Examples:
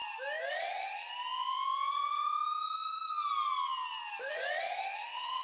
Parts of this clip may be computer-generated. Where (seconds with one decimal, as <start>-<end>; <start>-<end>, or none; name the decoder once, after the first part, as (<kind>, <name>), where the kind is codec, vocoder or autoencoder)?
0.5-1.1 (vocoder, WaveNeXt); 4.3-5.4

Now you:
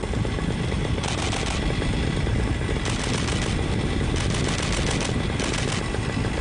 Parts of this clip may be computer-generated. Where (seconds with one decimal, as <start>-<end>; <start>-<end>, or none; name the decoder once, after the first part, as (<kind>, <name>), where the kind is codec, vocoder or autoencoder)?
none

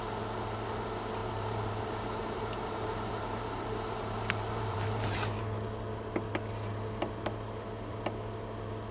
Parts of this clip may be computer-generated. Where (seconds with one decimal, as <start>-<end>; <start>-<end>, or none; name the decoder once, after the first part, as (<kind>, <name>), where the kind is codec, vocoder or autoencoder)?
1.2-5.4 (vocoder, BigVGAN v2)

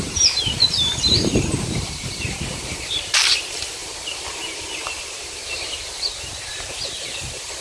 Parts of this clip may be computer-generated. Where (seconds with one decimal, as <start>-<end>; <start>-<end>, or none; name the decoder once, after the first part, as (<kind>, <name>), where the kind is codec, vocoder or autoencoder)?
0.0-7.6 (vocoder, BigVGAN v2)